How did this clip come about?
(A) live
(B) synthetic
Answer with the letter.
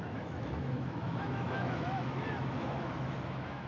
B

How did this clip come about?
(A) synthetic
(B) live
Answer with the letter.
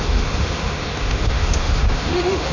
A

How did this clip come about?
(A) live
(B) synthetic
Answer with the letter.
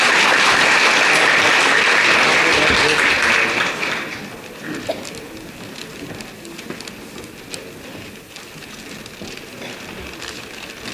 A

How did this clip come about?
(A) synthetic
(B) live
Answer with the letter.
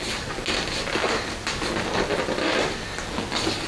B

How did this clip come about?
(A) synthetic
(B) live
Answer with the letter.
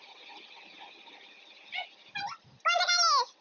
B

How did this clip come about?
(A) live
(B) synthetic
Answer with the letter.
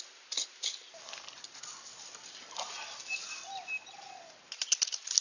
A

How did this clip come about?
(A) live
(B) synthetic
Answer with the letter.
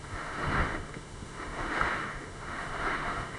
B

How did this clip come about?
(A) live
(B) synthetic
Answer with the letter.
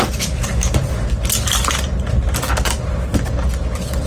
A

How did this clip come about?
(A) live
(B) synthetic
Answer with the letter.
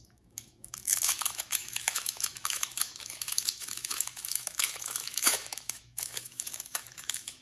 B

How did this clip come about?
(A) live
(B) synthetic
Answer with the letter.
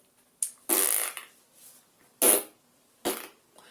A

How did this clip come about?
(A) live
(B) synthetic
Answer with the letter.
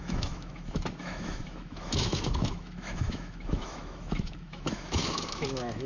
B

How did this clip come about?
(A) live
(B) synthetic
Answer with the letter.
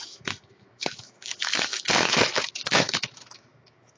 B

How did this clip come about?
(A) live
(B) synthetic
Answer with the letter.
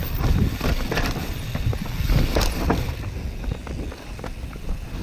A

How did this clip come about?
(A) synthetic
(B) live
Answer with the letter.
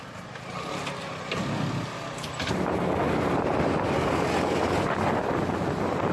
B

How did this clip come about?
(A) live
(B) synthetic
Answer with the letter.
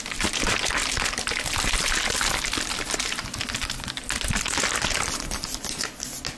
A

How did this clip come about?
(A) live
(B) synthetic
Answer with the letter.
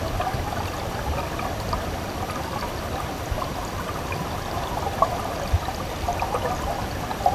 A